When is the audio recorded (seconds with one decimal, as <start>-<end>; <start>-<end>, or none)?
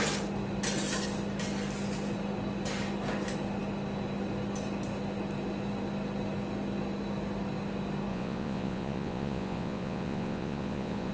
0.0-8.1